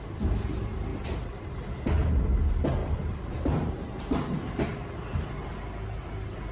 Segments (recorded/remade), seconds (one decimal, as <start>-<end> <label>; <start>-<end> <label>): 0.0-2.8 recorded; 2.8-3.7 remade; 3.7-6.5 recorded